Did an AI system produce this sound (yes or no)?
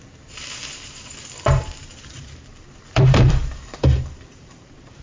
yes